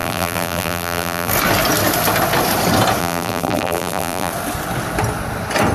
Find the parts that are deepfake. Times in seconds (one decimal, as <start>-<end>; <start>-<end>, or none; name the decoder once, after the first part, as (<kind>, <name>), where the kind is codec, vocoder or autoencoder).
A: 0.0-1.3 (vocoder, BigVGAN v2); 3.0-4.3

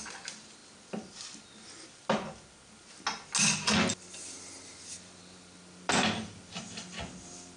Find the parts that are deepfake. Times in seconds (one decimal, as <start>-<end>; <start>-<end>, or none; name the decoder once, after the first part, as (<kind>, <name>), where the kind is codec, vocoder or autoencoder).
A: 0.0-0.6 (vocoder, BigVGAN v2); 5.2-7.6